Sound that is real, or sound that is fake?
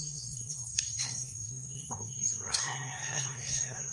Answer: fake